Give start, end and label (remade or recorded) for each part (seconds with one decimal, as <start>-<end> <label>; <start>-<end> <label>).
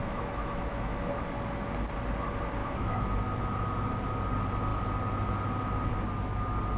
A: 0.0-1.2 remade; 1.2-2.6 recorded; 2.6-3.1 remade; 3.1-6.8 recorded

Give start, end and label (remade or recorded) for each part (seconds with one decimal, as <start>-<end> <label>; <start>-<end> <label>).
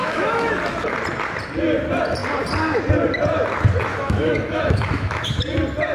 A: 0.0-0.5 remade; 0.5-3.9 recorded; 3.9-5.4 remade; 5.4-5.9 recorded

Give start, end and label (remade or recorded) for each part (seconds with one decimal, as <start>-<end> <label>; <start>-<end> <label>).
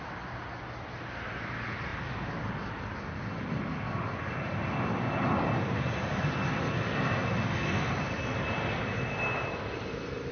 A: 0.0-10.3 recorded